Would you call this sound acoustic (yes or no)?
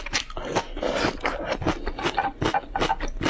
yes